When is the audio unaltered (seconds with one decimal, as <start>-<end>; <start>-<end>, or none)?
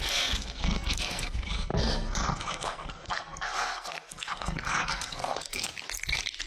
5.7-6.5